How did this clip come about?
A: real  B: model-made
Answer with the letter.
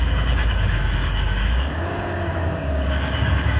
B